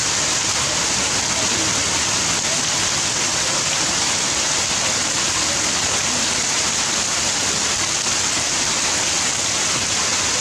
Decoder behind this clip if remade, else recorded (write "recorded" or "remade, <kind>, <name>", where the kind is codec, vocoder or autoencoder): recorded